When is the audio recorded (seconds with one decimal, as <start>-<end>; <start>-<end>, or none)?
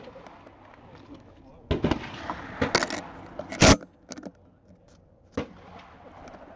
0.0-6.6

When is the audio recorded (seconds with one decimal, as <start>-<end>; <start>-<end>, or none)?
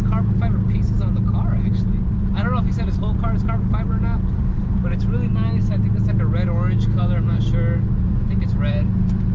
0.0-9.3